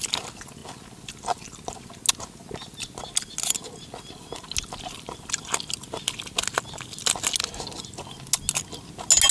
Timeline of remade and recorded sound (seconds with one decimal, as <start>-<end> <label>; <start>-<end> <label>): 0.0-9.3 recorded